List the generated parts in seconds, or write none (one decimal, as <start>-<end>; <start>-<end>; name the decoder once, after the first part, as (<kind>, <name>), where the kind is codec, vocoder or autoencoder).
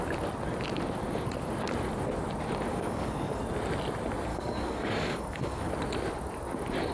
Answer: 2.7-3.4 (codec, DAC); 4.3-5.7